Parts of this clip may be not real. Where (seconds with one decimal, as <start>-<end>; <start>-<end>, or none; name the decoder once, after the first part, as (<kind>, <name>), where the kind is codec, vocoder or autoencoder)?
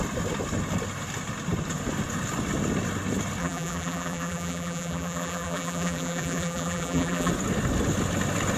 3.4-7.3 (vocoder, BigVGAN v2)